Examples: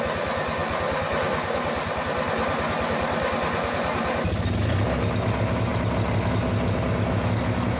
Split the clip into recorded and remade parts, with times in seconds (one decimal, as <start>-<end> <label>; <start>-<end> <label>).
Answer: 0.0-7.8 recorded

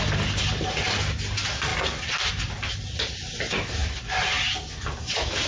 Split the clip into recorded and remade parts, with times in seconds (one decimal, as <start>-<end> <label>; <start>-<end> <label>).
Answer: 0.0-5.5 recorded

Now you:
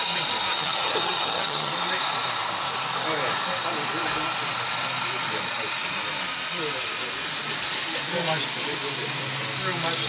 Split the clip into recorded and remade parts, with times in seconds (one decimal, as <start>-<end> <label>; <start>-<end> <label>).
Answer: 0.0-0.5 recorded; 0.5-1.7 remade; 1.7-10.1 recorded

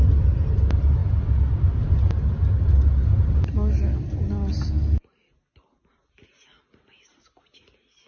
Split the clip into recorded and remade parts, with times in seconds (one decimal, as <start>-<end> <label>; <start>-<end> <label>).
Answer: 0.0-8.1 recorded

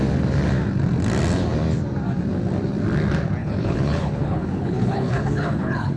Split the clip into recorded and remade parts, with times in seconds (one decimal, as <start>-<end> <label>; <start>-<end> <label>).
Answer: 0.0-3.4 recorded; 3.4-6.0 remade